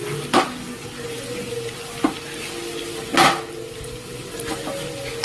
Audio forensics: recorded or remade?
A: recorded